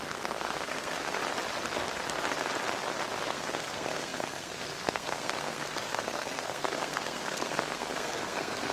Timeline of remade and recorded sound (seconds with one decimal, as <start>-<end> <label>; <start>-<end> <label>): 0.0-1.2 remade; 1.2-3.3 recorded; 3.3-8.7 remade